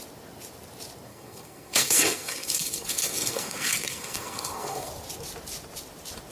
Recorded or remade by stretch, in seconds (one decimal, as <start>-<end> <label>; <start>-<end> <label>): 0.0-1.1 recorded; 1.1-4.9 remade; 4.9-6.3 recorded

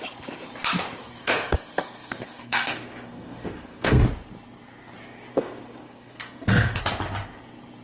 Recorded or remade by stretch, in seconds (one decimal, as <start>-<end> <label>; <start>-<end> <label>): 0.0-1.0 recorded; 1.0-4.0 remade; 4.0-5.3 recorded; 5.3-6.8 remade; 6.8-7.8 recorded

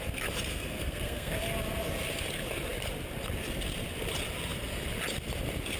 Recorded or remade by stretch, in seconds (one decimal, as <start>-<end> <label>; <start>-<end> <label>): 0.0-0.5 recorded; 0.5-1.3 remade; 1.3-5.8 recorded

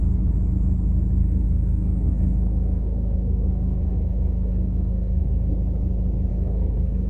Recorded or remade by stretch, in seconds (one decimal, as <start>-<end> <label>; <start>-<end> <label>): 0.0-1.2 recorded; 1.2-5.5 remade; 5.5-6.3 recorded; 6.3-7.1 remade

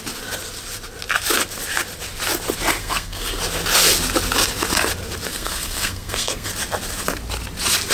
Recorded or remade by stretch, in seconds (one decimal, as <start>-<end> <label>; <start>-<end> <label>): 0.0-2.8 recorded; 2.8-3.4 remade; 3.4-5.3 recorded; 5.3-6.5 remade; 6.5-7.9 recorded

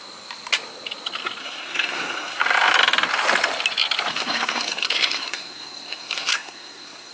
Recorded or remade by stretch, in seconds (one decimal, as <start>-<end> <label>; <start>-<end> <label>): 0.0-1.4 recorded; 1.4-2.4 remade; 2.4-4.1 recorded; 4.1-7.1 remade

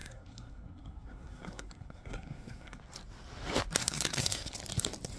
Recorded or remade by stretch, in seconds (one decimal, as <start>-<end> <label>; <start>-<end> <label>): 0.0-2.8 remade; 2.8-3.8 recorded; 3.8-4.5 remade; 4.5-5.2 recorded